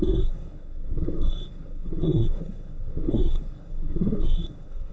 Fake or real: fake